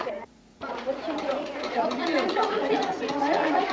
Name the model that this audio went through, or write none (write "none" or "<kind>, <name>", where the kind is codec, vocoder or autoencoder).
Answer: vocoder, Vocos